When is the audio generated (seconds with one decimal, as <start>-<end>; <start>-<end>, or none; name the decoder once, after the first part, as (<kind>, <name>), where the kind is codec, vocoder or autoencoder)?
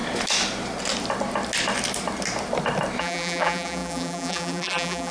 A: 3.0-5.1 (vocoder, BigVGAN v2)